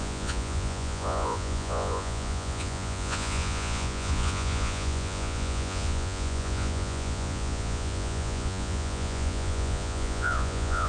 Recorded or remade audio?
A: remade